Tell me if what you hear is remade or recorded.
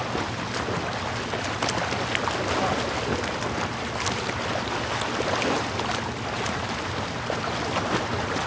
recorded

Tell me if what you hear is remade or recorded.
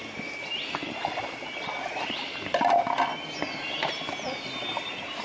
recorded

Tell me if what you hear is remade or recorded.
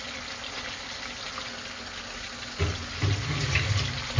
recorded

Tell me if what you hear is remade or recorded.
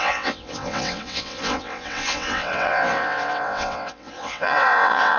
remade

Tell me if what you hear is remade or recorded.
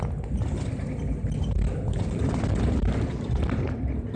recorded